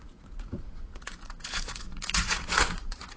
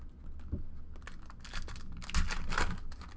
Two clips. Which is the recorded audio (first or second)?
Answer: second